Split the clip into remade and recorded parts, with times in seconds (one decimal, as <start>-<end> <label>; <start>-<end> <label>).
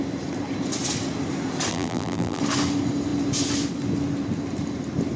0.0-1.7 recorded; 1.7-2.4 remade; 2.4-5.2 recorded